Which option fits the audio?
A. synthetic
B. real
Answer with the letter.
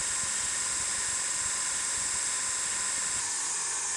B